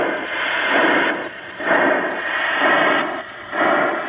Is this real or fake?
fake